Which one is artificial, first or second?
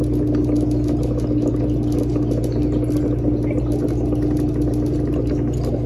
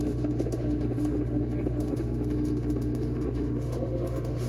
second